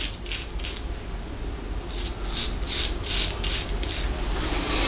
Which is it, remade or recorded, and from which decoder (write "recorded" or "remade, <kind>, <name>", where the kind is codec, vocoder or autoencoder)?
recorded